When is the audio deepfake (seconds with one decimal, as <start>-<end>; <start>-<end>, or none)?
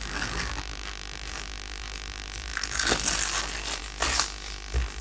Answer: none